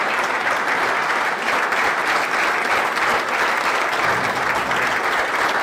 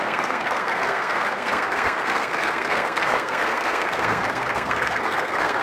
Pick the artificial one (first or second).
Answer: second